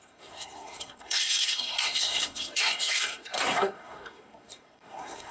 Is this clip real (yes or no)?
no